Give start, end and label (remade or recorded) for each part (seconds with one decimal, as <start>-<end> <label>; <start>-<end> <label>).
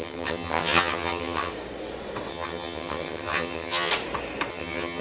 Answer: 0.0-1.5 remade; 1.5-2.3 recorded; 2.3-3.9 remade; 3.9-4.5 recorded; 4.5-5.0 remade